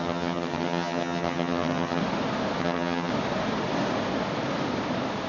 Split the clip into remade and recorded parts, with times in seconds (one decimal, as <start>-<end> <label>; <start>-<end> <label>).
0.0-2.0 remade; 2.0-2.6 recorded; 2.6-3.1 remade; 3.1-5.3 recorded